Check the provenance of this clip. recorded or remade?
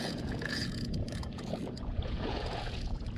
remade